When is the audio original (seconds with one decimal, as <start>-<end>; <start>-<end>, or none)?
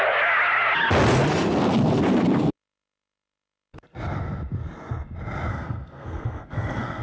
0.0-5.5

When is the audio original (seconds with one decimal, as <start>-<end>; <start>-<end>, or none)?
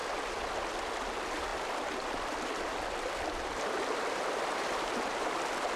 0.0-5.8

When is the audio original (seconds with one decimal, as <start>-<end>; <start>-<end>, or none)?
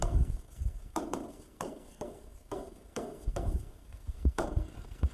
none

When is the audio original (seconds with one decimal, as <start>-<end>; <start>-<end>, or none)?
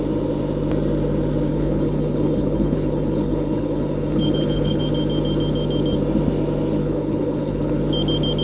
0.0-1.5; 4.8-6.8; 7.8-8.4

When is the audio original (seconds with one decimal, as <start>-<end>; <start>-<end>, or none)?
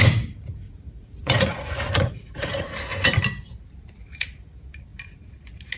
0.0-0.6; 2.7-5.8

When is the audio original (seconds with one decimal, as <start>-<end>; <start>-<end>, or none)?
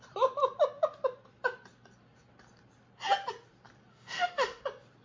0.0-3.9; 4.6-5.0